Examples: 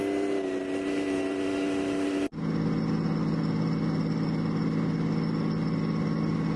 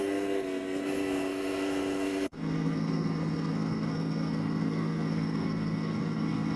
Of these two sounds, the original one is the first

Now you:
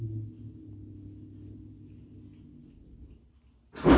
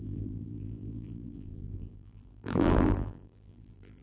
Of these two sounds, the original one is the first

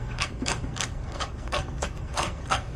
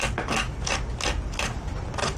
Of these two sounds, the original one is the second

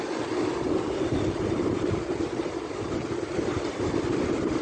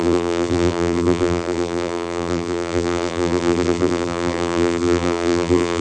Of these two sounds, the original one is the first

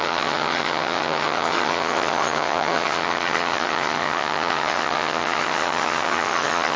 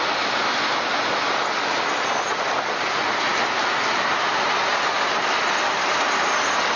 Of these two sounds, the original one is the second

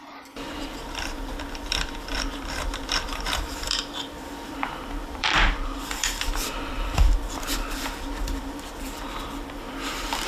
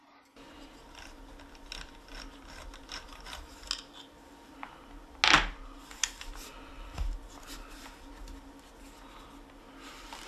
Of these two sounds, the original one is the second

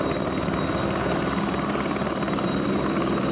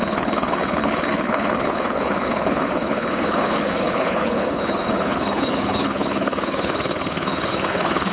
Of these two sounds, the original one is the first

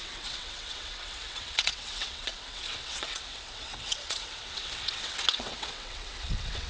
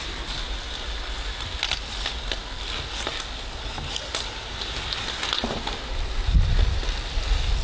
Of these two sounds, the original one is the second